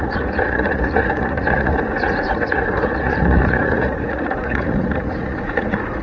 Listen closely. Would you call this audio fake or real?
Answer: fake